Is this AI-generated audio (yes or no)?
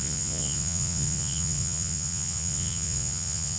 yes